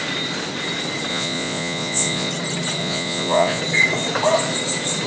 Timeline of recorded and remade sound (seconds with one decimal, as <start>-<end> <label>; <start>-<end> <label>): 0.0-1.1 recorded; 1.1-2.3 remade; 2.3-2.8 recorded; 2.8-3.6 remade; 3.6-5.1 recorded